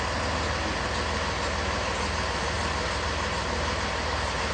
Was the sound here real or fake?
real